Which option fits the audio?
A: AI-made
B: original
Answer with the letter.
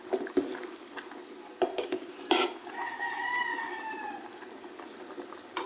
B